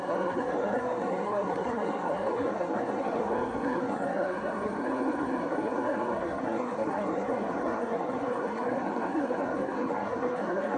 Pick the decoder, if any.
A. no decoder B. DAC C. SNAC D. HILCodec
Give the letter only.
C